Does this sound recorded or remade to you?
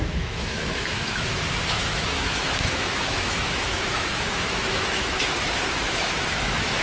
remade